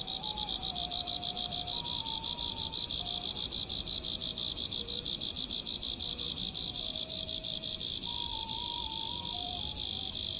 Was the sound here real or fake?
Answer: fake